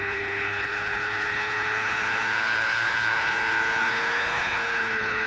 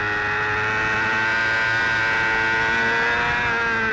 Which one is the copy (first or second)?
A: first